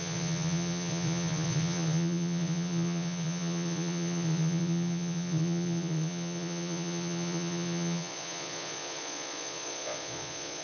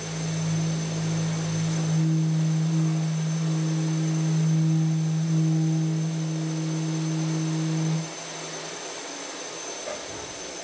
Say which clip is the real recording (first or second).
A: second